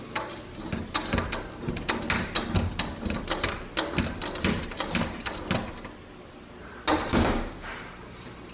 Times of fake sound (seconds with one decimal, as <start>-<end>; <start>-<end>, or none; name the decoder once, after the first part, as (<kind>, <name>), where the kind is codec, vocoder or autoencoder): 7.1-7.7 (codec, DAC)